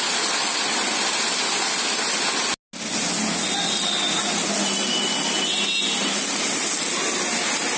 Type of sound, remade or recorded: recorded